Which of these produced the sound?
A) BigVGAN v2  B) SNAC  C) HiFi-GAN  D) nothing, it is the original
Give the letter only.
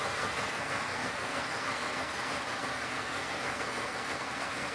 B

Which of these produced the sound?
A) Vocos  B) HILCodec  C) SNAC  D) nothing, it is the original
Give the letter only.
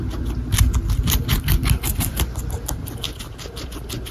D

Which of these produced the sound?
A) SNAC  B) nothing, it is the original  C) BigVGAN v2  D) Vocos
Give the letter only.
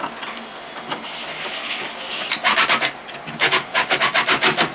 B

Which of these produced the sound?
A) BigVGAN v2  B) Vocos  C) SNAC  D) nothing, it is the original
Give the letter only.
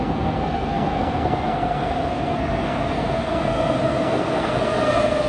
C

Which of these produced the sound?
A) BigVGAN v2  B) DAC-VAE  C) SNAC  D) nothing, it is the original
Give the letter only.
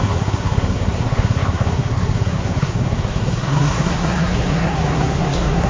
C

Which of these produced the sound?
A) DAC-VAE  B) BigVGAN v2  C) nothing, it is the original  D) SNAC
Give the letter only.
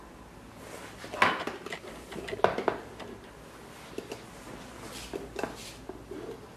C